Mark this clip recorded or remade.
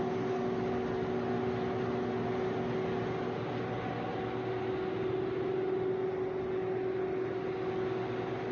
recorded